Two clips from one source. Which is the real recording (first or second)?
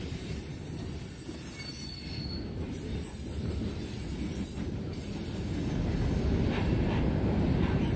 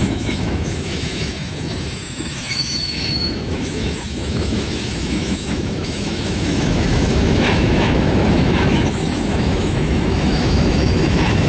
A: first